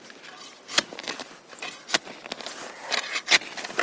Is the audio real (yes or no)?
yes